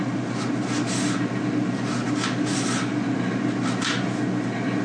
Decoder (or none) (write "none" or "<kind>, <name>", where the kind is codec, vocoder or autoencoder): none